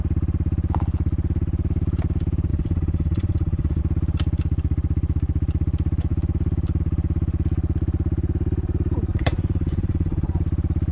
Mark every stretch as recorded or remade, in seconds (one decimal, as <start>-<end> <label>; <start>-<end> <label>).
0.0-2.5 recorded; 2.5-3.8 remade; 3.8-9.1 recorded; 9.1-10.4 remade; 10.4-10.9 recorded

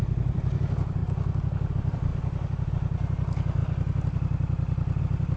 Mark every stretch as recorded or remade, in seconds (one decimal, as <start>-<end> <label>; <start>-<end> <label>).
0.0-1.0 remade; 1.0-1.7 recorded; 1.7-3.6 remade; 3.6-5.0 recorded; 5.0-5.4 remade

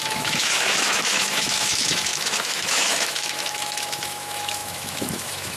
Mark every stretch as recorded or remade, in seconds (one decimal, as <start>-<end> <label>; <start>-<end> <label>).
0.0-5.6 remade

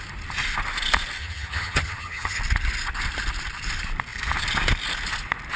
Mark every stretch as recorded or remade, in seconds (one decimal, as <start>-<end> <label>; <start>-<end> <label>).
0.0-1.2 recorded; 1.2-2.4 remade; 2.4-5.6 recorded

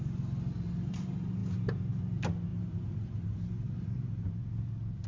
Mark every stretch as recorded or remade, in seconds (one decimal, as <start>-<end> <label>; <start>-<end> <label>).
0.0-2.5 recorded; 2.5-4.4 remade; 4.4-5.1 recorded

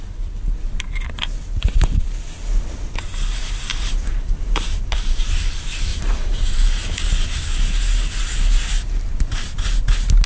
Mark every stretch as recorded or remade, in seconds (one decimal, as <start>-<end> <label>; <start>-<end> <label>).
0.0-3.7 recorded; 3.7-5.3 remade; 5.3-5.9 recorded; 5.9-7.1 remade; 7.1-10.3 recorded